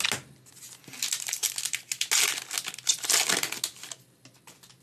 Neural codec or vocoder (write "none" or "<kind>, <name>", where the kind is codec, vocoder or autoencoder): none